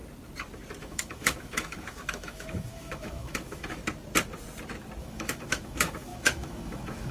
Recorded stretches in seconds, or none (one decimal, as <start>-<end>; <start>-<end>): 0.0-0.8; 3.8-5.0